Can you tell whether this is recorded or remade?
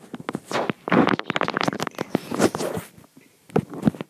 remade